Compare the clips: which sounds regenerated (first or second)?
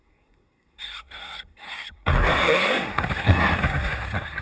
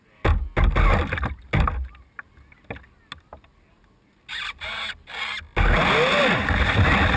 first